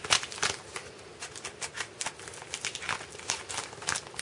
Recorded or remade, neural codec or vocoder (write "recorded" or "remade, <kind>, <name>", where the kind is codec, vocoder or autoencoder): recorded